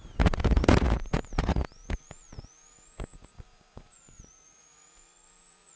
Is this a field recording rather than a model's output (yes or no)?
no